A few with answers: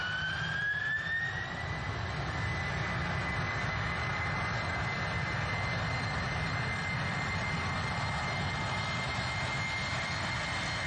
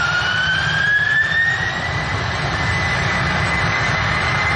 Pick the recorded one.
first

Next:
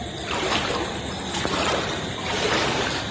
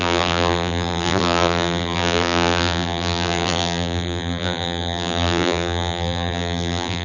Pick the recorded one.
first